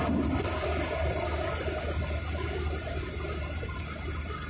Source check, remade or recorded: recorded